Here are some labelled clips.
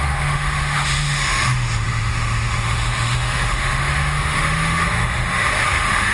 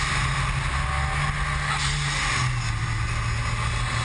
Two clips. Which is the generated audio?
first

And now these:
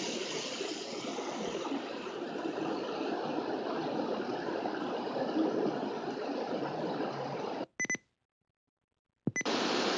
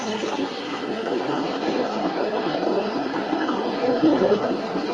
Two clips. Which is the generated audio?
second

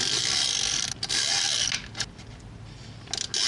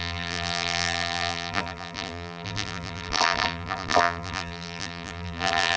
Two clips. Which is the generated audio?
second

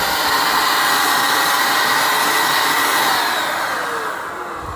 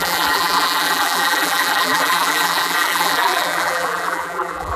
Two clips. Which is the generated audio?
second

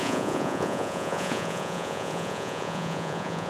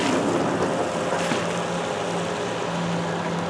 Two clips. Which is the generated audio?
first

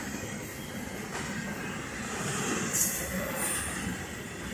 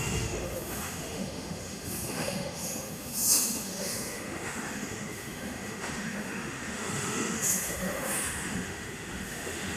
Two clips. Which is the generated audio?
second